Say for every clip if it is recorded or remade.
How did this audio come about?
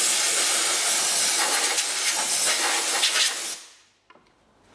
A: recorded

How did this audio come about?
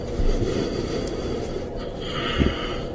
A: remade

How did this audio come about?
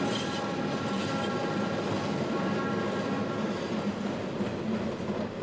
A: recorded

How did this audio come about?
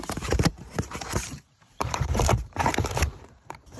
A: remade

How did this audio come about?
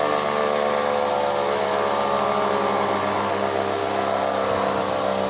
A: recorded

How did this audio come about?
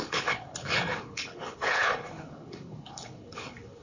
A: remade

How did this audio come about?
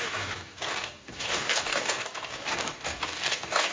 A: remade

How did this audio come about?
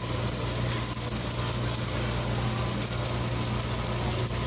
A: recorded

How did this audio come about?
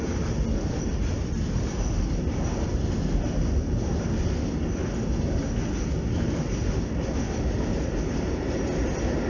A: recorded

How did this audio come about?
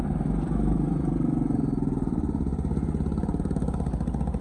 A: recorded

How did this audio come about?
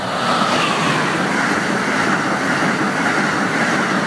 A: recorded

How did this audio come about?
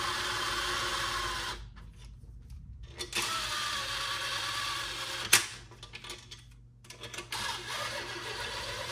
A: recorded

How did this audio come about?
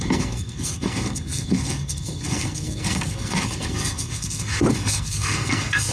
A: remade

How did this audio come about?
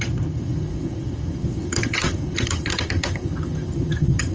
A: remade